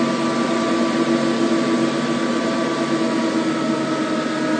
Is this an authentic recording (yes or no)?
yes